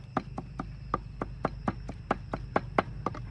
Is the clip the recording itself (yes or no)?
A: yes